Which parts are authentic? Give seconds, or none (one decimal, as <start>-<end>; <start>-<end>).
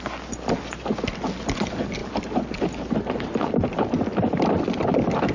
0.0-5.3